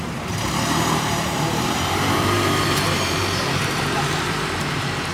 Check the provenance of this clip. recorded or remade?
remade